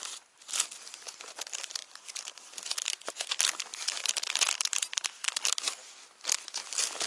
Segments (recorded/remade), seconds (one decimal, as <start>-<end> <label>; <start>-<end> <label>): 0.0-1.8 recorded; 1.8-2.5 remade; 2.5-3.7 recorded; 3.7-4.5 remade; 4.5-7.1 recorded